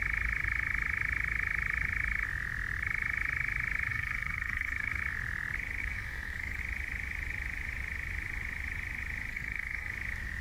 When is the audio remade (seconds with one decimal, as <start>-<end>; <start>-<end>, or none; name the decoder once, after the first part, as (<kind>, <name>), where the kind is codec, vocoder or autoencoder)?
3.9-5.0 (codec, SNAC); 5.8-6.6; 9.3-9.9